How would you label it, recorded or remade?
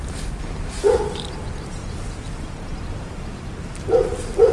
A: recorded